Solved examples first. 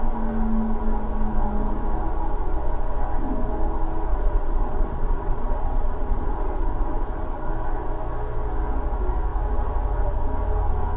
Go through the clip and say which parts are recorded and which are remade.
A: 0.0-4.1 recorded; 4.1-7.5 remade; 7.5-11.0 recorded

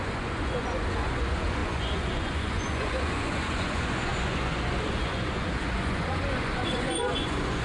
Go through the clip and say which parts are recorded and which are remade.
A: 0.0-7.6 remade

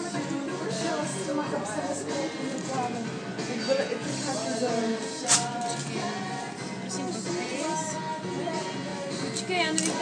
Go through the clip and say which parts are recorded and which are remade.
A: 0.0-10.0 recorded

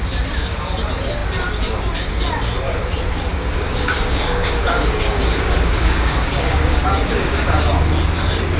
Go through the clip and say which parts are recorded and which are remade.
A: 0.0-3.3 recorded; 3.3-7.7 remade; 7.7-8.6 recorded